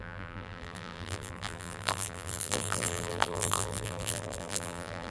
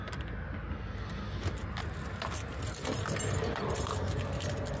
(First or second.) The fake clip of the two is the first